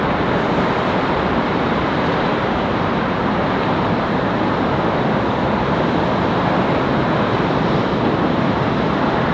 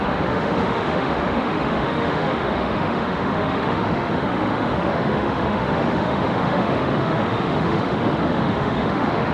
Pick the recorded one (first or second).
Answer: first